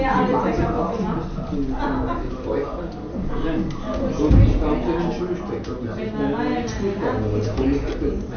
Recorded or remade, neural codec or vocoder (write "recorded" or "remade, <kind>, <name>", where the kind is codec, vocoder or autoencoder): recorded